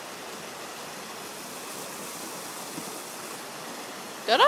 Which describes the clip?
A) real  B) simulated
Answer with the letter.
A